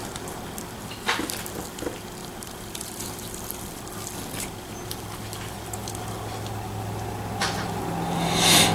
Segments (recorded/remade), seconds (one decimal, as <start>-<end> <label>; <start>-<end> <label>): 0.0-2.2 recorded; 2.2-3.4 remade; 3.4-8.7 recorded